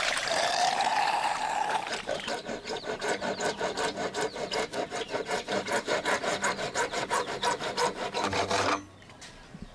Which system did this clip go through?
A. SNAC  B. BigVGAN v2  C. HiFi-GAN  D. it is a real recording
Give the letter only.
B